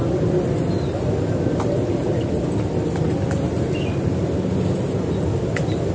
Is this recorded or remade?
recorded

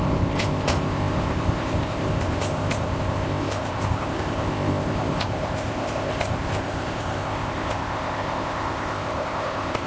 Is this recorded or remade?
remade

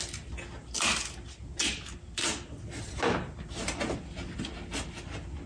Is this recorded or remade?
recorded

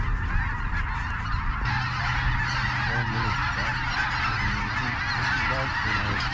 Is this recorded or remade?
recorded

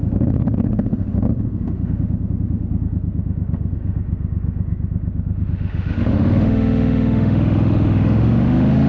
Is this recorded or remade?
remade